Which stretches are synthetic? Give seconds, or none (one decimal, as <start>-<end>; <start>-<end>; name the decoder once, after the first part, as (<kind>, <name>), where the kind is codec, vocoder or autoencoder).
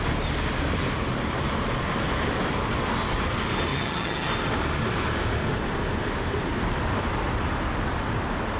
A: 3.7-4.3 (vocoder, HiFi-GAN)